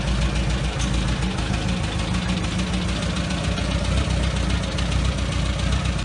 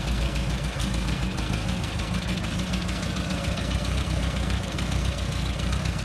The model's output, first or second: second